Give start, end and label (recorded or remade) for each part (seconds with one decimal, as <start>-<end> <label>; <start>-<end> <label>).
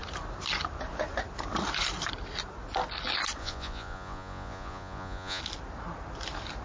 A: 0.0-3.4 recorded; 3.4-5.4 remade; 5.4-6.6 recorded